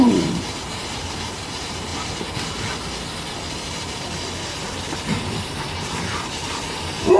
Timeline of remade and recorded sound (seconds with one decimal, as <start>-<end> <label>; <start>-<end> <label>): 0.0-1.9 remade; 1.9-6.0 recorded; 6.0-6.4 remade; 6.4-7.2 recorded

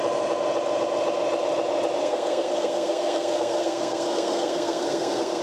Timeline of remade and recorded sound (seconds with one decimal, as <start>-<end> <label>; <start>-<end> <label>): 0.0-2.0 recorded; 2.0-5.4 remade